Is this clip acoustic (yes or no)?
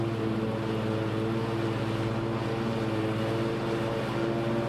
yes